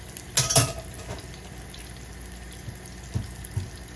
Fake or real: real